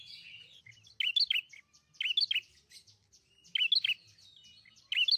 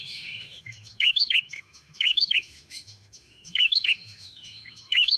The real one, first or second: first